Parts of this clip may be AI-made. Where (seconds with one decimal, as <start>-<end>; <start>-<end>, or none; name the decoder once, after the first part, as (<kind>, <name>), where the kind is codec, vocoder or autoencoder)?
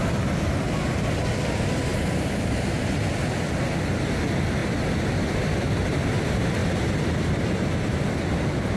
none